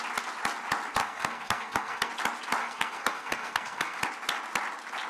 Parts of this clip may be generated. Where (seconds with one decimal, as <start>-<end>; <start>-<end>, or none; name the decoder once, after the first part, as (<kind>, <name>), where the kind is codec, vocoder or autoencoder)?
1.0-2.1 (codec, SNAC); 2.6-4.0